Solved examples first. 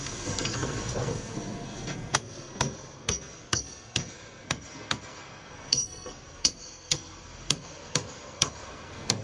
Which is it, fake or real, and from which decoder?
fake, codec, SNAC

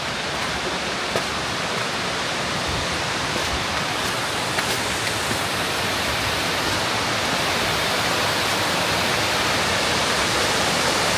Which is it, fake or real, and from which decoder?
fake, vocoder, BigVGAN v2